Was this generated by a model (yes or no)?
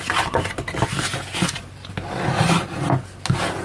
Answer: no